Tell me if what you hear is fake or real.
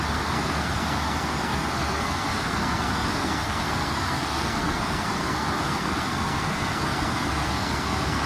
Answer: fake